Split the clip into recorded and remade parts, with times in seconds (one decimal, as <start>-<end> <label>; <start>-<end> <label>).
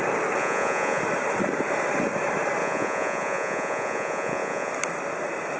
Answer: 0.0-0.4 recorded; 0.4-1.0 remade; 1.0-2.6 recorded; 2.6-4.7 remade; 4.7-5.6 recorded